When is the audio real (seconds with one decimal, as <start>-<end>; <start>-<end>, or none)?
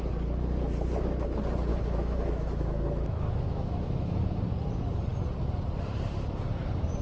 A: 0.0-1.7; 4.2-7.0